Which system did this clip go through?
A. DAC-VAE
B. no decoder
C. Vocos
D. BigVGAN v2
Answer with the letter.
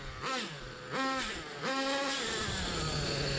B